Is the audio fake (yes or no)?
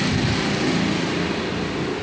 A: no